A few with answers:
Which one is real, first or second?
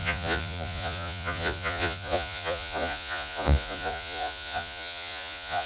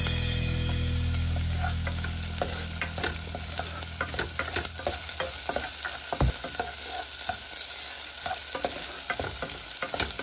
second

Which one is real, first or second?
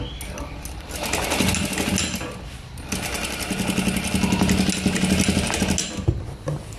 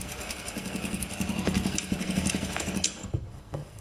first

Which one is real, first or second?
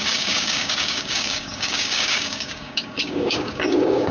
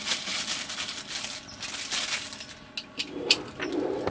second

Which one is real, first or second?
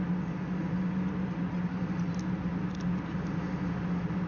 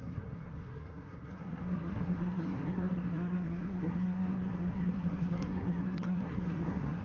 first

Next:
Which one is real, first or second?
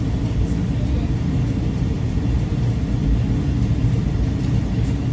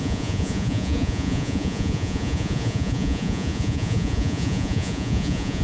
first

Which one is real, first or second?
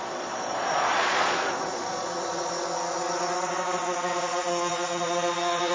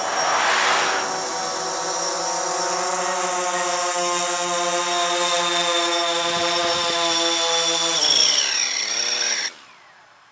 second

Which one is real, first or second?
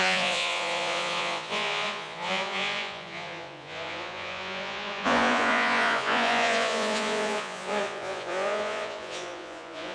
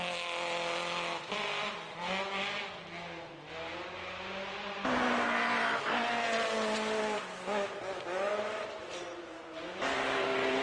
second